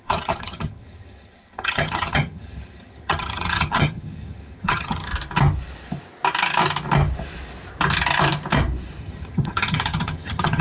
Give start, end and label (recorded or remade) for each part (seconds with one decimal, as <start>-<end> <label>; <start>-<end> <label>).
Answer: 0.0-5.1 remade; 5.1-9.0 recorded; 9.0-10.6 remade